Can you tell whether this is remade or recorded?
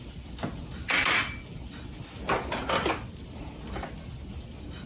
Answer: recorded